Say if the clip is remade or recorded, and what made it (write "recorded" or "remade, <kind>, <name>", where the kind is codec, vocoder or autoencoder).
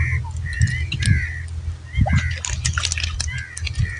recorded